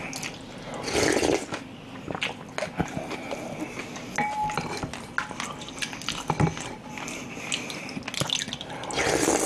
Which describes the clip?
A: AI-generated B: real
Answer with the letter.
B